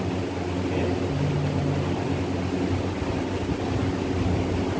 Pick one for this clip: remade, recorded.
recorded